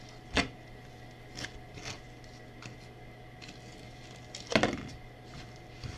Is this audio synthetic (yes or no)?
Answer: no